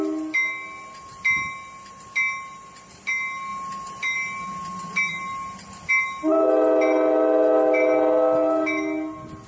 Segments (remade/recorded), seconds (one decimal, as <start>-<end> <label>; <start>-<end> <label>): 0.0-9.5 recorded